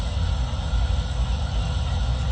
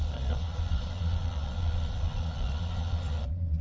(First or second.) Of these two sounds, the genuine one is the first